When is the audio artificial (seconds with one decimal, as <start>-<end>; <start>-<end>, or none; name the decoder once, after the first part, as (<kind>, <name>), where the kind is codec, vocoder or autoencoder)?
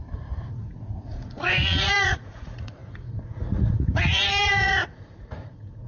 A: 0.0-5.9 (vocoder, Vocos)